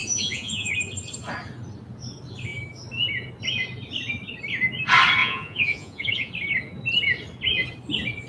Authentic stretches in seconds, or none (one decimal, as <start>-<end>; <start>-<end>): 0.7-5.2; 6.3-8.3